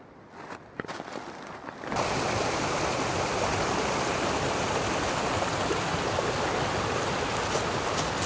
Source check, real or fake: real